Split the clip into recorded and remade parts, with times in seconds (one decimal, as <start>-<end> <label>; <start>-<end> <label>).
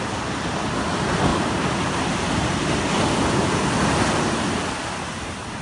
0.0-1.3 recorded; 1.3-2.7 remade; 2.7-5.6 recorded